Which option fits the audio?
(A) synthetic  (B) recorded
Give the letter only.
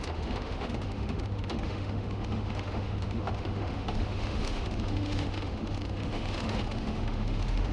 A